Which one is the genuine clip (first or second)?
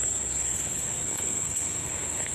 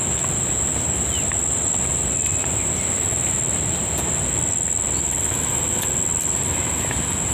second